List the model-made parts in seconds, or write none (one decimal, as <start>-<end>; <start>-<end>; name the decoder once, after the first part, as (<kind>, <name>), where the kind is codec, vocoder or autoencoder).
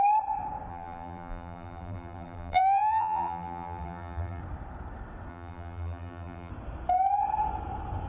0.7-4.4 (vocoder, BigVGAN v2); 5.3-6.5